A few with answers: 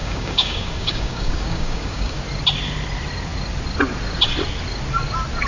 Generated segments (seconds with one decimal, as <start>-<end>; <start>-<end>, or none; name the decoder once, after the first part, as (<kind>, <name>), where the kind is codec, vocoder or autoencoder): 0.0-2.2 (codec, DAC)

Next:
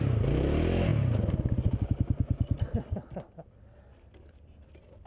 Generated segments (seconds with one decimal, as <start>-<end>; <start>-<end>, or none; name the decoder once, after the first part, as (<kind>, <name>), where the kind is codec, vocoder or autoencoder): none

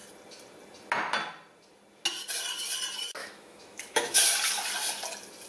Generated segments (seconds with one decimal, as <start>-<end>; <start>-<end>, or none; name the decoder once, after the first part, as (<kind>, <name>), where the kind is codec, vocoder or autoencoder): 3.2-4.2 (autoencoder, DAC-VAE)

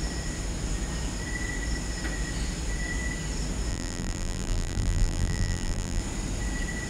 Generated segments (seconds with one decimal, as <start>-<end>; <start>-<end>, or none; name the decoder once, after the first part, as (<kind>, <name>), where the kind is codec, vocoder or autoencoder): 3.7-6.0 (vocoder, BigVGAN v2)

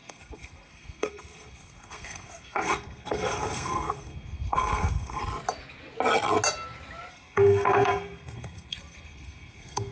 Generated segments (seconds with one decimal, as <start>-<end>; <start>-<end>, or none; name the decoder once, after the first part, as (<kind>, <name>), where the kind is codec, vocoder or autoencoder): 0.0-5.2 (codec, SNAC); 7.1-9.9

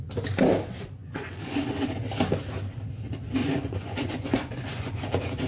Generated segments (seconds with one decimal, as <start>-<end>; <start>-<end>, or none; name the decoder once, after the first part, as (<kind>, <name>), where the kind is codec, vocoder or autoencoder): 1.0-1.5 (vocoder, Vocos); 3.4-5.0